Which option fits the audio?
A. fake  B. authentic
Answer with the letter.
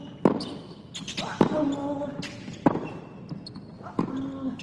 B